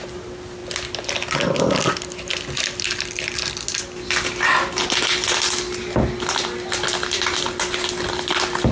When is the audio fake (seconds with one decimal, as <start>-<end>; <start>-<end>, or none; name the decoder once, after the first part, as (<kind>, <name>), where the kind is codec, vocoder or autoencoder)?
none